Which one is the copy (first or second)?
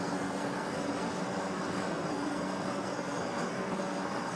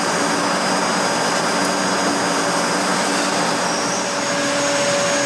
first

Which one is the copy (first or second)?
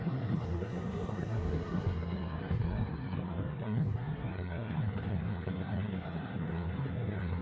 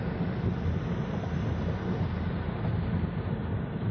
first